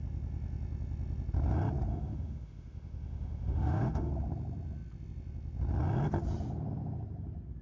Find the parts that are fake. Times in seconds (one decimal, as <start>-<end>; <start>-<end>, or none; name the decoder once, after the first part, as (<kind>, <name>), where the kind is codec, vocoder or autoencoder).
1.9-4.1 (autoencoder, DAC-VAE)